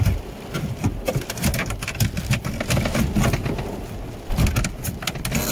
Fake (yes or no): no